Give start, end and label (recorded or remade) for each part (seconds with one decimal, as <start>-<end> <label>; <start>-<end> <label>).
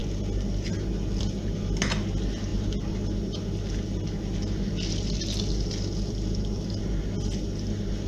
0.0-8.1 recorded